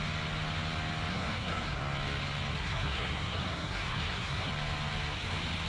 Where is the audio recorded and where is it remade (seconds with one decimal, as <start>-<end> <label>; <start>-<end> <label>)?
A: 0.0-1.1 recorded; 1.1-1.8 remade; 1.8-2.5 recorded; 2.5-4.5 remade; 4.5-5.7 recorded